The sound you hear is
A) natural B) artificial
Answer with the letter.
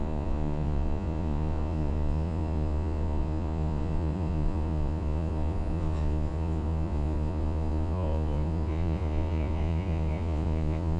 B